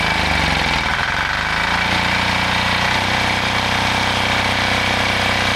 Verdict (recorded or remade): recorded